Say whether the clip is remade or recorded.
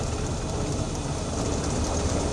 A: recorded